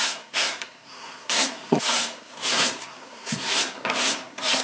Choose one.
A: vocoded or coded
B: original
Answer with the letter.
A